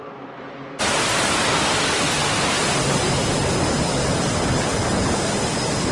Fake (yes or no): no